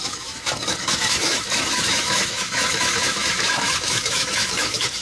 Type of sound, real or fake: fake